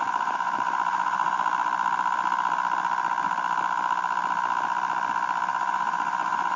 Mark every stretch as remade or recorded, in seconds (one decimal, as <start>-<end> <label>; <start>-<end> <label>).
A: 0.0-1.5 remade; 1.5-5.5 recorded; 5.5-6.6 remade